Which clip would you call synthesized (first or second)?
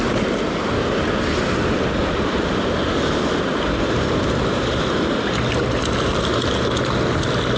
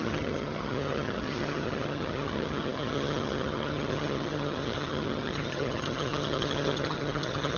second